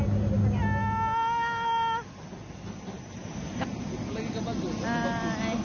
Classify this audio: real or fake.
real